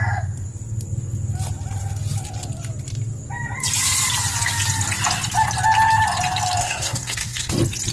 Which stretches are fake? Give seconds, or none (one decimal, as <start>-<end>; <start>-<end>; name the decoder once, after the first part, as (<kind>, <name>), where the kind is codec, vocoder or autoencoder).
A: 6.6-7.5 (codec, SNAC)